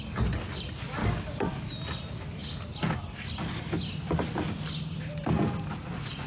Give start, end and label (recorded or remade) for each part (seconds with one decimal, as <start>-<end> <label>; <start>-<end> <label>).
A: 0.0-1.0 recorded; 1.0-1.7 remade; 1.7-6.3 recorded